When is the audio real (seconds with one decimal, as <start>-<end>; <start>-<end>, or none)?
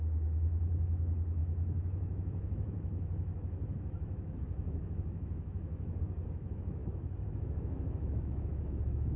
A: none